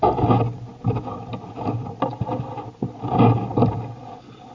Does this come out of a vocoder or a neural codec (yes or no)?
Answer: no